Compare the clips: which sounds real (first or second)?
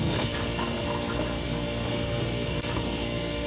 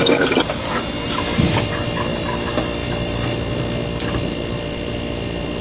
second